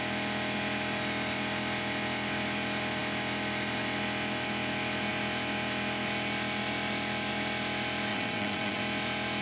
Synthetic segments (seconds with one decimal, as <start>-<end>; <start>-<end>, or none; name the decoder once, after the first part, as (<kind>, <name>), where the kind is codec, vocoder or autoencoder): 8.1-8.8 (vocoder, WaveNeXt)

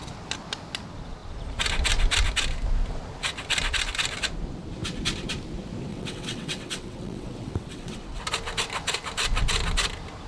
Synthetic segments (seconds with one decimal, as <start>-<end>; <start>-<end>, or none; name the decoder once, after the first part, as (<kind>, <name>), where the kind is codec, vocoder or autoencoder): 5.9-8.2 (vocoder, WaveNeXt)

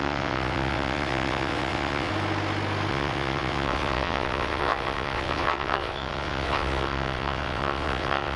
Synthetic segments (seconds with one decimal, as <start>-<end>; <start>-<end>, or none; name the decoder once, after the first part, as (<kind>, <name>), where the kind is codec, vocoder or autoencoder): 0.0-2.1 (vocoder, WaveNeXt); 2.9-8.4